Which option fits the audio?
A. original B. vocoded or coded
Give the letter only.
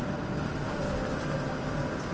A